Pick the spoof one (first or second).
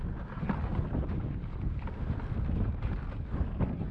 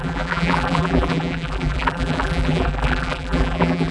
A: second